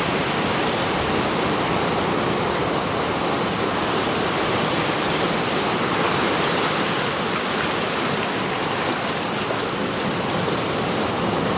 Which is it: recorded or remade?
recorded